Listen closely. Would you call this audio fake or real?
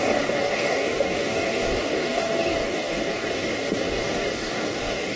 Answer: fake